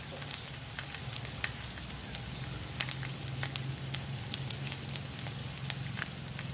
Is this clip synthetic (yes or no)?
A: no